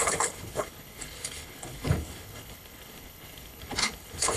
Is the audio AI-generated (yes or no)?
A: yes